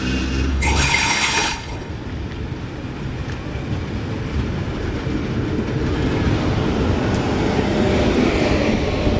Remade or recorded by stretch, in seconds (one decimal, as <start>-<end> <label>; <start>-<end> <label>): 0.0-0.5 recorded; 0.5-1.9 remade; 1.9-9.2 recorded